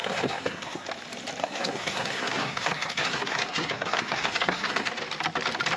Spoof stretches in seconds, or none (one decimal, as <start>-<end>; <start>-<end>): 0.0-0.9; 1.4-4.9